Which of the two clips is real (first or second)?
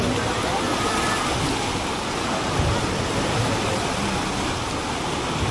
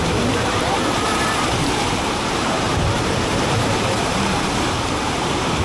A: first